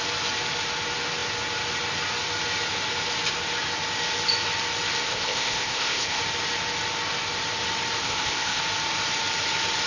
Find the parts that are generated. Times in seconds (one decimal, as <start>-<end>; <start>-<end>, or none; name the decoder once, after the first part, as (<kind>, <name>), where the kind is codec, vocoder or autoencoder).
5.1-6.2 (codec, ZipCodec); 8.0-8.6